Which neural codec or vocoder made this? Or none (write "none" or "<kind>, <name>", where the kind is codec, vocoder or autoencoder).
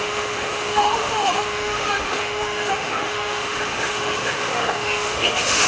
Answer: autoencoder, DAC-VAE